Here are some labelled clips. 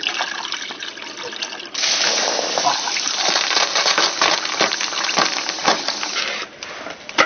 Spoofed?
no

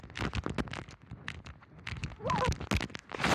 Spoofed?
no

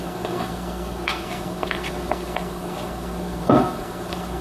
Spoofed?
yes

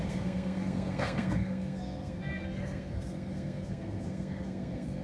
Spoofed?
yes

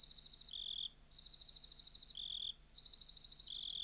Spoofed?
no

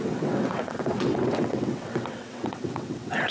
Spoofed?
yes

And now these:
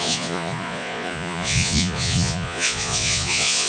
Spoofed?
yes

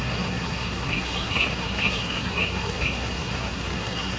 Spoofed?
yes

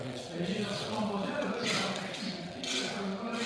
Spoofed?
yes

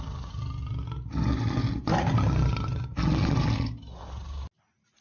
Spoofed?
no